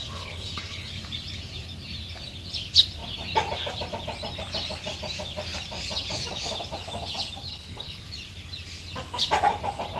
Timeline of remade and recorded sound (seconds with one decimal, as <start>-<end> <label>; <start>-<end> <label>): 0.0-0.9 remade; 0.9-7.5 recorded; 7.5-8.0 remade; 8.0-10.0 recorded